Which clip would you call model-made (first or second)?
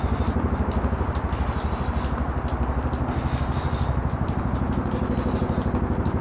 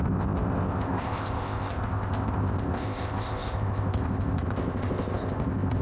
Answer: second